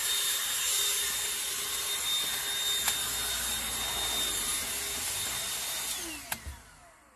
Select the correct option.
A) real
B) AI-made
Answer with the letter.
A